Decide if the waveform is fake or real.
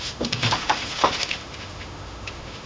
fake